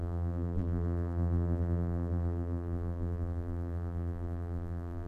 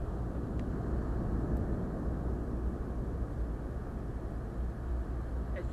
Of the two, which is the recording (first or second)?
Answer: second